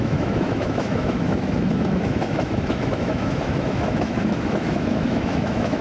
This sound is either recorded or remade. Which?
remade